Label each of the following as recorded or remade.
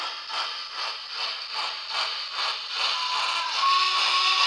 recorded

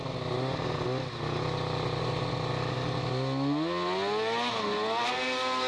recorded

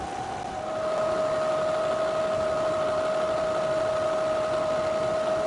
recorded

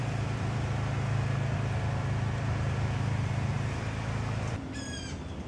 remade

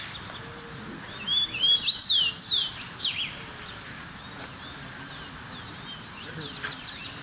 recorded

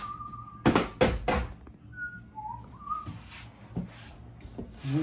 recorded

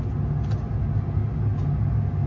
recorded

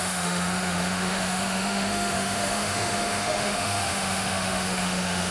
remade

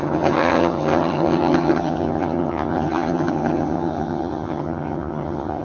remade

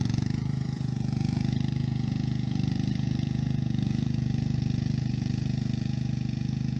remade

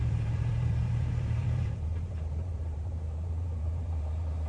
remade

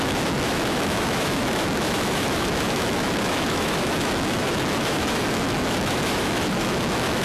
remade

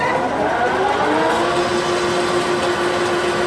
recorded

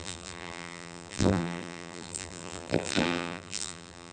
remade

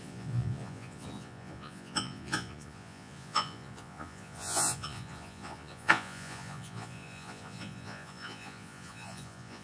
remade